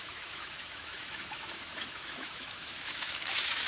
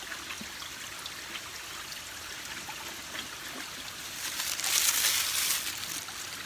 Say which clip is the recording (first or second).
second